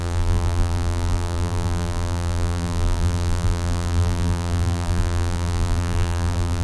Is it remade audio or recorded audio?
remade